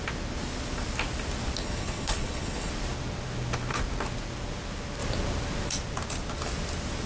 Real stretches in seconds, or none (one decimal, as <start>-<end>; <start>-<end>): 0.0-1.6; 2.7-7.1